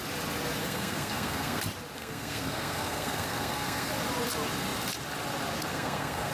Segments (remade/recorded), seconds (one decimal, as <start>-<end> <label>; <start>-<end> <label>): 0.0-0.6 recorded; 0.6-1.6 remade; 1.6-2.0 recorded; 2.0-3.9 remade; 3.9-5.7 recorded; 5.7-6.3 remade

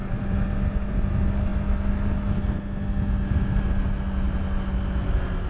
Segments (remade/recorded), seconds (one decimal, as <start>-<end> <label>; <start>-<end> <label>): 0.0-0.7 remade; 0.7-5.5 recorded

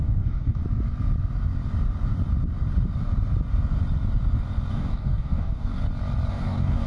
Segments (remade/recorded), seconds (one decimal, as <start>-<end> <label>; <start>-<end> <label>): 0.0-0.6 remade; 0.6-4.7 recorded; 4.7-5.8 remade; 5.8-6.3 recorded; 6.3-6.9 remade

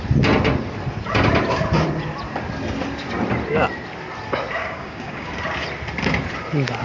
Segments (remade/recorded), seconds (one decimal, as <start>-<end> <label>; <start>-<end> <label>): 0.0-4.6 recorded; 4.6-5.3 remade; 5.3-6.8 recorded